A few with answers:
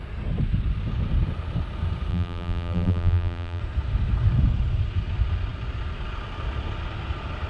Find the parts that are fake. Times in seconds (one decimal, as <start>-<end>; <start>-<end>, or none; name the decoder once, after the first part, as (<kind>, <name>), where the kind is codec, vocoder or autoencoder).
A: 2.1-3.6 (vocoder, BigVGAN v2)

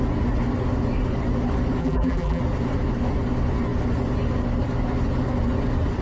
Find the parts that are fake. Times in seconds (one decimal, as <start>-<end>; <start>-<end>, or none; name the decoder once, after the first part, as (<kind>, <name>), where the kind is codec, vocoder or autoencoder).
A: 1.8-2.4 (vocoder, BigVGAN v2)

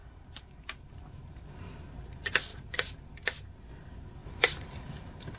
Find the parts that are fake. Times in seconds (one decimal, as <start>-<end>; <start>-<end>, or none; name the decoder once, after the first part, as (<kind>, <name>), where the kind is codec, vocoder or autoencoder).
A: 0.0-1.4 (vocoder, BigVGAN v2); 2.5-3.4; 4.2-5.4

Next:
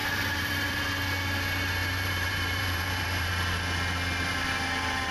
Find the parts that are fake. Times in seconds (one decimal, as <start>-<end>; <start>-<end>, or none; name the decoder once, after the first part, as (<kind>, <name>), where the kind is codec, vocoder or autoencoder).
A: 0.0-0.8 (vocoder, BigVGAN v2); 1.8-3.3

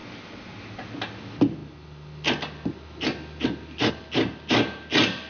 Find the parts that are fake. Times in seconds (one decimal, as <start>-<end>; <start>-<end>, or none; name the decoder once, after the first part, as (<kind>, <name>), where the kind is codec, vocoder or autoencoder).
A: 0.0-0.6 (vocoder, BigVGAN v2)

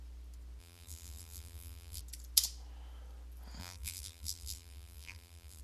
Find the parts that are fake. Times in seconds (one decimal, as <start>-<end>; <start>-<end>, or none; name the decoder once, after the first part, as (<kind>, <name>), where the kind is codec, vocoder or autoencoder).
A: 0.6-2.0 (vocoder, BigVGAN v2); 3.6-5.6

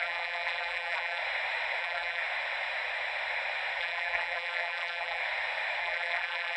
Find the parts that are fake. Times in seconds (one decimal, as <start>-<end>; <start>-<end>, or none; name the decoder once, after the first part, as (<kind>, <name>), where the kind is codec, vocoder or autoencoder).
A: 0.0-1.2 (vocoder, BigVGAN v2); 1.8-2.2; 3.8-5.2; 5.8-6.6

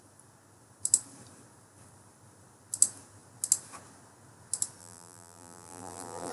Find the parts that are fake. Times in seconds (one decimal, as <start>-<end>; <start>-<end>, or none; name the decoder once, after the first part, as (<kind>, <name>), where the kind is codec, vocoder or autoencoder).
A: 4.8-6.3 (vocoder, BigVGAN v2)